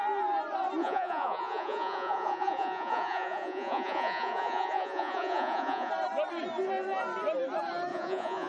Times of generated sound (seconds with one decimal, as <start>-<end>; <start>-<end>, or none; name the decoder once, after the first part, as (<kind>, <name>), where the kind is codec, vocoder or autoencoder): 0.8-5.9 (vocoder, Vocos); 7.9-8.5